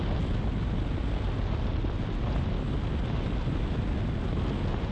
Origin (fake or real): real